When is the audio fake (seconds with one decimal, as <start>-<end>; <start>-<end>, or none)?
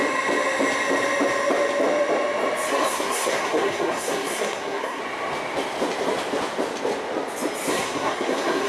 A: 2.7-5.0; 7.7-8.7